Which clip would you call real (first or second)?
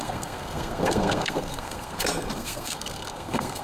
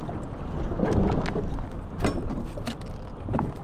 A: second